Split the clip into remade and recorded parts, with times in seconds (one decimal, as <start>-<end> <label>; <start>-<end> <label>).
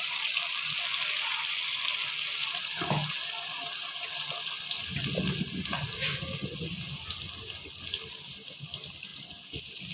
0.0-9.9 recorded